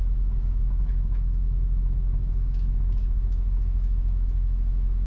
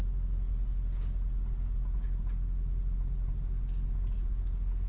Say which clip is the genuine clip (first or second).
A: second